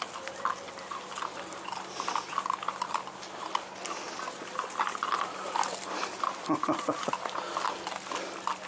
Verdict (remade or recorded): recorded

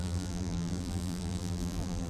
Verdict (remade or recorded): remade